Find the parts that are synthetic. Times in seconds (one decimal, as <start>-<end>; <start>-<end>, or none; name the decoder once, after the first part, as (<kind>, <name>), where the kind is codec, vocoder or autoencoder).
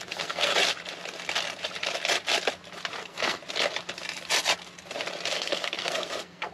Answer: 0.0-0.5 (codec, SNAC); 3.0-3.4; 5.3-6.5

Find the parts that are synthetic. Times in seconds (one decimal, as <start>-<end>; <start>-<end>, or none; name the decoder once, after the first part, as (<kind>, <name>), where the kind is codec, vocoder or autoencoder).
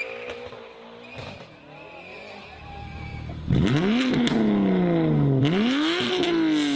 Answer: none